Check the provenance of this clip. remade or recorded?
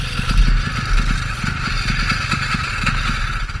recorded